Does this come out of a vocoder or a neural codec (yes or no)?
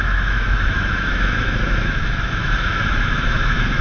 yes